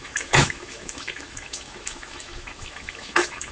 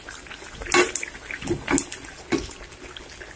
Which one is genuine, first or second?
second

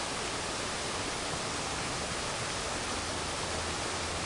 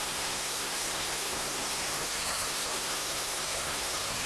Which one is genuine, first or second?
first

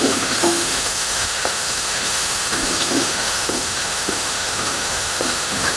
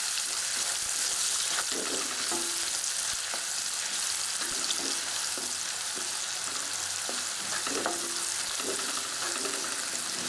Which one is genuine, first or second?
second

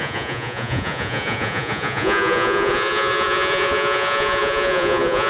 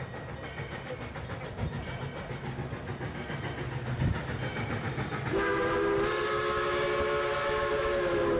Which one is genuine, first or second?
second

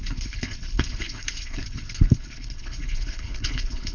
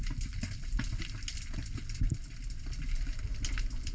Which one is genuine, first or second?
second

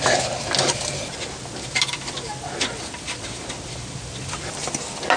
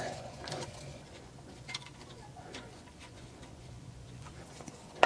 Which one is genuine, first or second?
first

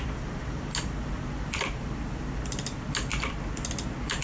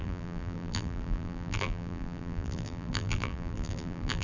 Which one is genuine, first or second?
first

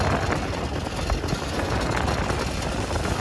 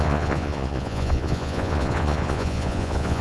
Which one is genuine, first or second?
first